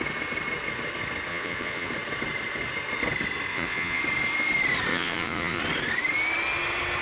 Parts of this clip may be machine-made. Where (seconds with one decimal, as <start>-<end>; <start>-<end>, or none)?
1.3-1.9; 3.5-4.0; 4.9-5.6